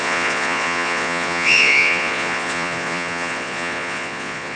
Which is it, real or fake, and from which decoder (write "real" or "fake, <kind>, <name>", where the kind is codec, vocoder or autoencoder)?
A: fake, vocoder, Vocos